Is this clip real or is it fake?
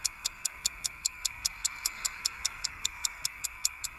fake